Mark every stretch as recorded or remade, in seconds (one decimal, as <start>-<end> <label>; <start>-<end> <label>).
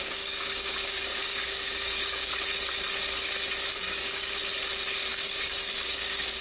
0.0-2.3 remade; 2.3-3.7 recorded; 3.7-4.4 remade; 4.4-5.1 recorded; 5.1-6.4 remade